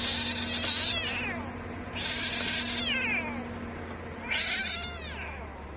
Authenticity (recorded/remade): recorded